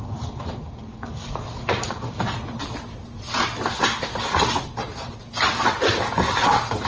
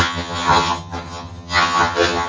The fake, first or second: second